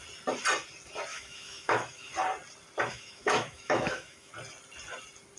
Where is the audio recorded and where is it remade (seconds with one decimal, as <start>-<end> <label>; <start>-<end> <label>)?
0.0-1.1 recorded; 1.1-2.1 remade; 2.1-2.9 recorded; 2.9-4.3 remade; 4.3-5.4 recorded